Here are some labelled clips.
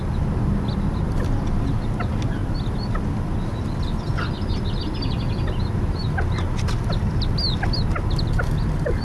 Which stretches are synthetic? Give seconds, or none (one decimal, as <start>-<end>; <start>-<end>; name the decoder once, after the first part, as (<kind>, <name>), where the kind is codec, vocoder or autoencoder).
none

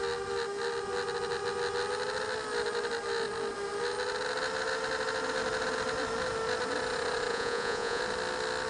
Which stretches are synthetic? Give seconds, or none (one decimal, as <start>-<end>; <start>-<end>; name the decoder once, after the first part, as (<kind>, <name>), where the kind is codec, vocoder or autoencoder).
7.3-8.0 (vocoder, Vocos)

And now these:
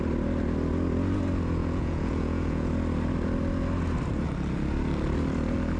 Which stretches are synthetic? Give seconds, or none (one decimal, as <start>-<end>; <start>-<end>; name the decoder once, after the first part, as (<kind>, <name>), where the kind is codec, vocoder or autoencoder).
1.6-2.7 (vocoder, Vocos)